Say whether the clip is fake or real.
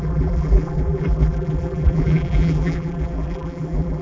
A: fake